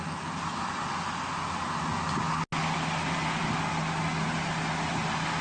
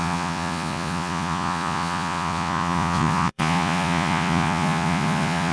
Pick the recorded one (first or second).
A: first